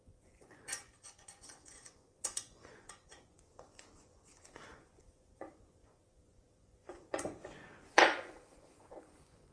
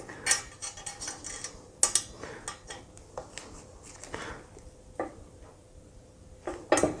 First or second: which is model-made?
first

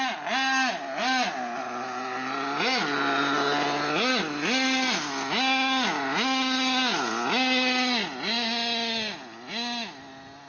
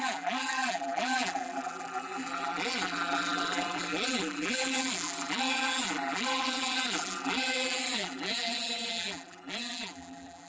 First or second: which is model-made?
second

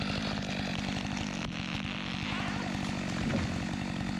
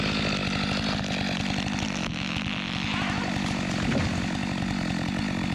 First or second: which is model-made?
second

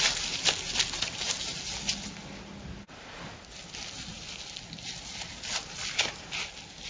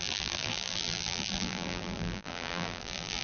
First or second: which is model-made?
second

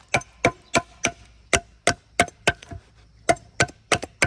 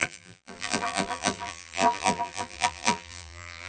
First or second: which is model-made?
second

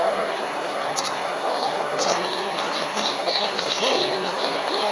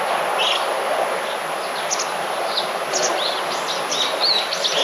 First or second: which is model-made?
first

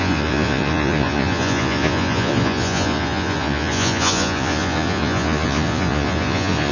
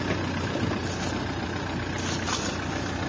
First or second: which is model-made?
first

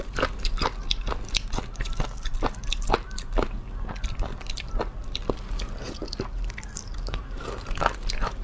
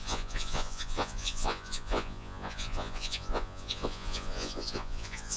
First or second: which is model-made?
second